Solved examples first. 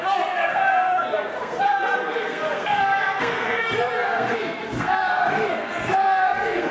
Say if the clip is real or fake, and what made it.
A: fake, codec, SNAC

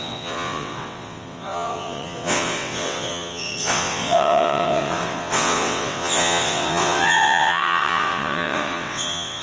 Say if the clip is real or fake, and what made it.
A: fake, vocoder, WaveNeXt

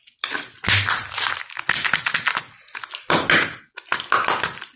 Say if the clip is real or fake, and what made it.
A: real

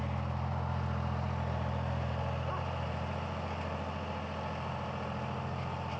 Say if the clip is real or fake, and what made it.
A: real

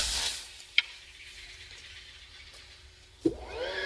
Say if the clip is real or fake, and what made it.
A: real